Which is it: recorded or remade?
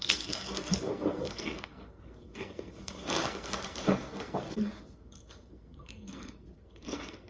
remade